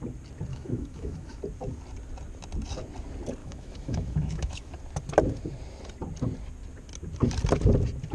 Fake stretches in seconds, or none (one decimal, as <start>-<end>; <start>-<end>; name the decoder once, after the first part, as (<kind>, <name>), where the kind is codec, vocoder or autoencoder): 0.5-1.4 (autoencoder, DAC-VAE); 3.4-4.7